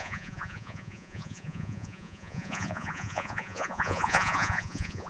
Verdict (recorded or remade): remade